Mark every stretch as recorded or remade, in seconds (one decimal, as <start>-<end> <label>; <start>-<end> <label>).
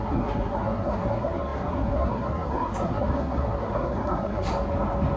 0.0-4.5 remade; 4.5-5.2 recorded